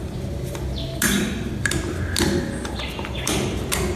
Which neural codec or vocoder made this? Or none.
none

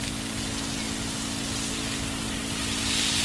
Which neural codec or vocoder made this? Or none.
none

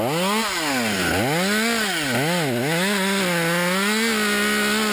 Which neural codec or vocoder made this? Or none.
none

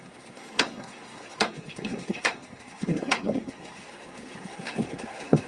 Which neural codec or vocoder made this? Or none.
codec, SNAC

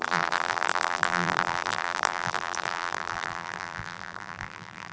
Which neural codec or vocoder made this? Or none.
vocoder, BigVGAN v2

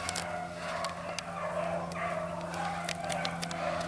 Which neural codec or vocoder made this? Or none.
none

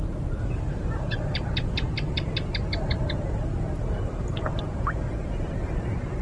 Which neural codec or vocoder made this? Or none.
none